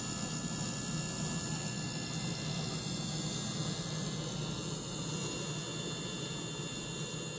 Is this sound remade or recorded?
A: recorded